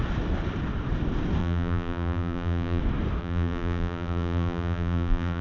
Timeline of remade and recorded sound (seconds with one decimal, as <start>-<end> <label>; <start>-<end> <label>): 0.0-1.4 recorded; 1.4-2.8 remade; 2.8-3.2 recorded; 3.2-5.4 remade